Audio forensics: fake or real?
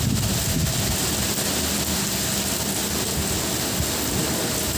real